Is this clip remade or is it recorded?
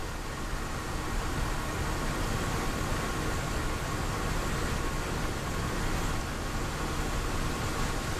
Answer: recorded